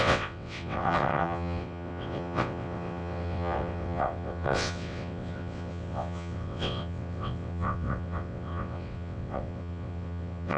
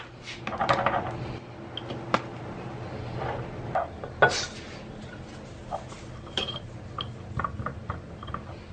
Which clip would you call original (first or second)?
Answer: second